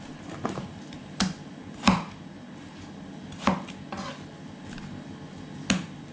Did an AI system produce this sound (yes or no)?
no